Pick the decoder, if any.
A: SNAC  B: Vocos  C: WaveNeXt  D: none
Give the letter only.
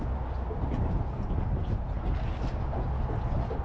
D